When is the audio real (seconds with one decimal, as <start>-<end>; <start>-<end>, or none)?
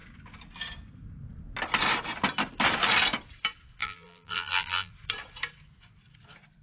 0.0-3.8; 4.9-6.6